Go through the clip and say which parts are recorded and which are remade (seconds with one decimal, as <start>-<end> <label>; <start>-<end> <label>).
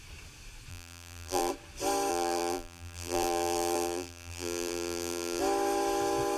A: 0.0-0.7 recorded; 0.7-1.5 remade; 1.5-2.1 recorded; 2.1-5.4 remade; 5.4-6.4 recorded